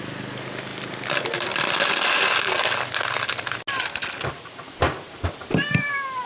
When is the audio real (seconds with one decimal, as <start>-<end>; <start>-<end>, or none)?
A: 0.0-6.3